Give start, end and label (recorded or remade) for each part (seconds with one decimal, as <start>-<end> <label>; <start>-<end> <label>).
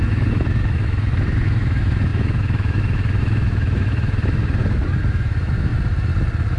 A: 0.0-4.6 remade; 4.6-5.1 recorded; 5.1-5.7 remade; 5.7-6.6 recorded